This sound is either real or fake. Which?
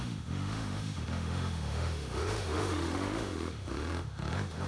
fake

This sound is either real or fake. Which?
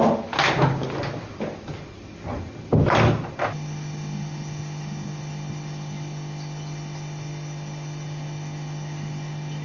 real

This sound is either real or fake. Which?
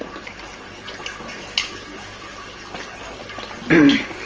real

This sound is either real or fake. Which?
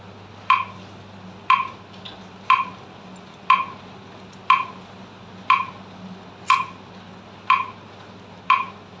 real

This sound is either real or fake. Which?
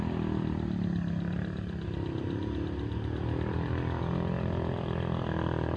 real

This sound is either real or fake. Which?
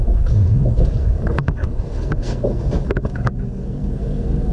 fake